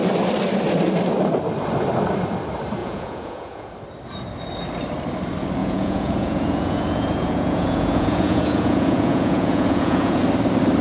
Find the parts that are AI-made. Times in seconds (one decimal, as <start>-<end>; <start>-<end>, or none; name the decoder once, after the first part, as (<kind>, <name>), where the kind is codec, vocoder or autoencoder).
2.8-3.7 (vocoder, Vocos); 5.6-10.2